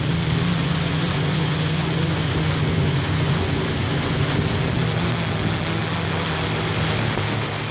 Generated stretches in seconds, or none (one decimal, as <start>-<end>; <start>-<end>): 0.6-4.4